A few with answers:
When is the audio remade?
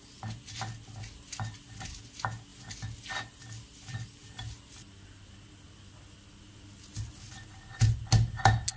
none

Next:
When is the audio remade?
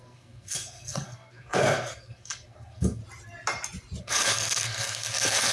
0.0-3.0 (codec, SNAC); 4.0-5.5